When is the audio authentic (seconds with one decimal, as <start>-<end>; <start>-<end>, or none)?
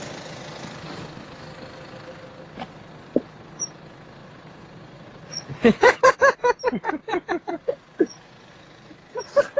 0.0-4.2; 6.1-7.0; 8.9-9.6